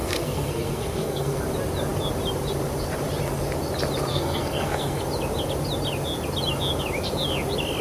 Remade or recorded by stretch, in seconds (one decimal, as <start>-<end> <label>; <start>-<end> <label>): 0.0-1.4 remade; 1.4-4.1 recorded; 4.1-5.0 remade; 5.0-7.8 recorded